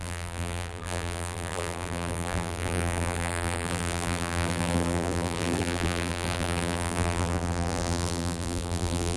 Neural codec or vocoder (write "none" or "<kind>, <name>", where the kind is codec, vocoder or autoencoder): vocoder, BigVGAN v2